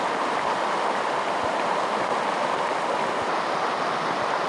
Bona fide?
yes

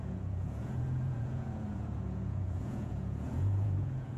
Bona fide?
no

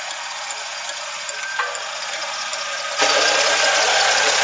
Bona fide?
yes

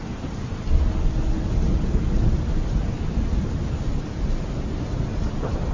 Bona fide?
yes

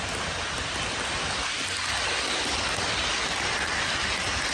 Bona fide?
yes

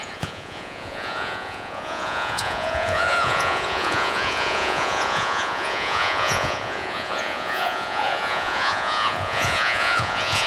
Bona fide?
no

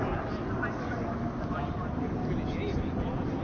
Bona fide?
yes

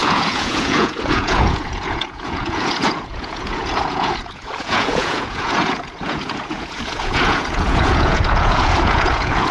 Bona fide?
no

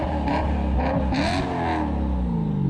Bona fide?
yes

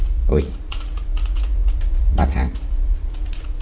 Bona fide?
no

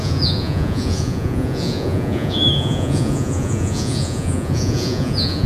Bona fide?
no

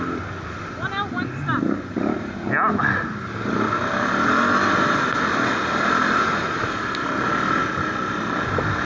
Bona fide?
yes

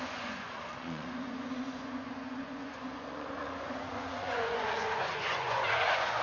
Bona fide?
no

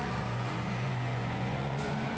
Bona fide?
no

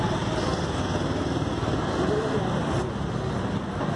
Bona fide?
yes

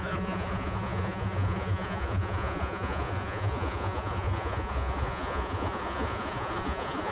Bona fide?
no